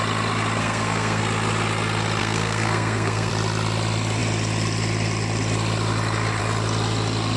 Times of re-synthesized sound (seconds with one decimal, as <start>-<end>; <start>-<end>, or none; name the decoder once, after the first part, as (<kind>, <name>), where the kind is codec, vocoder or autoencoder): 0.6-1.2 (codec, SNAC); 2.2-3.3